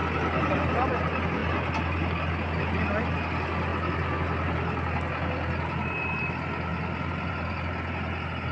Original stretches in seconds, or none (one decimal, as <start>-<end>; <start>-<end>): 0.0-8.5